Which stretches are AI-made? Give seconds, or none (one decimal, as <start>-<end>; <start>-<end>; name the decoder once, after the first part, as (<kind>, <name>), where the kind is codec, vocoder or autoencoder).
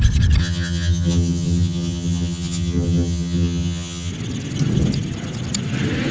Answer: 0.4-4.1 (vocoder, HiFi-GAN)